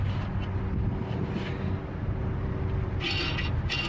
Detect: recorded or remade recorded